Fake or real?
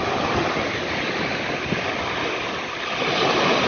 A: real